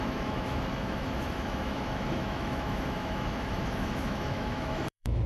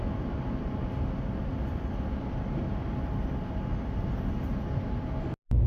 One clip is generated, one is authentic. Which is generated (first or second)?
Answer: first